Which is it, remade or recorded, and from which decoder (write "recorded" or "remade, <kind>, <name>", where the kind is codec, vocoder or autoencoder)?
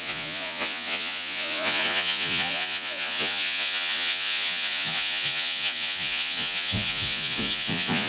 remade, vocoder, Vocos